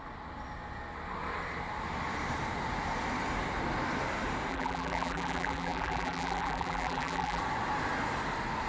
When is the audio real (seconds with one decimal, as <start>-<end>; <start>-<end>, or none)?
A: 0.0-4.5; 7.4-8.7